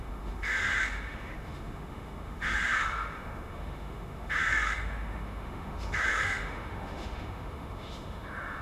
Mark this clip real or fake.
fake